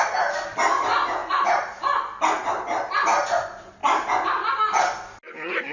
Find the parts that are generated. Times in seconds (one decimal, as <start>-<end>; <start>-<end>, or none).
1.2-1.8